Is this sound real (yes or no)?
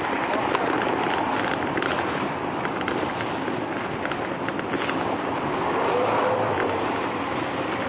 no